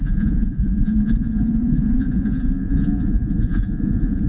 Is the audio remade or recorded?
remade